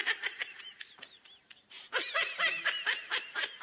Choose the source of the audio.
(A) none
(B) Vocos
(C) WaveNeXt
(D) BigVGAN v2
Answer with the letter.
D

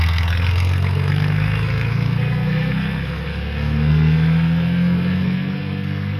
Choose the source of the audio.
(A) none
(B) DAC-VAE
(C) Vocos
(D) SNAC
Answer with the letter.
D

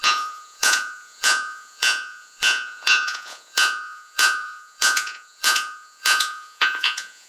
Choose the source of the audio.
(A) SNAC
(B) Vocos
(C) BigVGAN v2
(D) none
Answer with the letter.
B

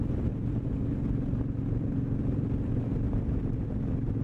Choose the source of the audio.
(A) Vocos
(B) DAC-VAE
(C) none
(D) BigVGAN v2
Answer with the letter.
D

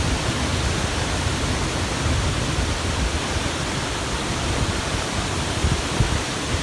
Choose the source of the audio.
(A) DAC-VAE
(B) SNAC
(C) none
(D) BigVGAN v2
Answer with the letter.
D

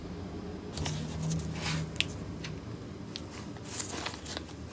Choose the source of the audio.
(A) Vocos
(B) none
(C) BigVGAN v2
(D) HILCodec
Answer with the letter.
B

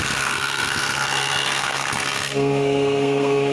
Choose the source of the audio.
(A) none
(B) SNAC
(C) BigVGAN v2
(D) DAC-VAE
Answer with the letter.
B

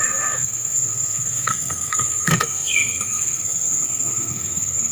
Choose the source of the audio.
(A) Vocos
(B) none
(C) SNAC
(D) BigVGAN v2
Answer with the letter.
C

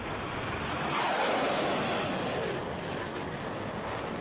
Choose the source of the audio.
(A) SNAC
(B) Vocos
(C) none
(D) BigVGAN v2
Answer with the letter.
C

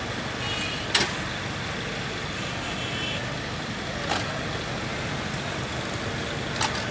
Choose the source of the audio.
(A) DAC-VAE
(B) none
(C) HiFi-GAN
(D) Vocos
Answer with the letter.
B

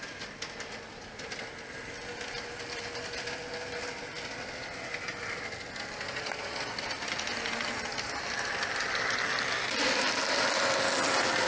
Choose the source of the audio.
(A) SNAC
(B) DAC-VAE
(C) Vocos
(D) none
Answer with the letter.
D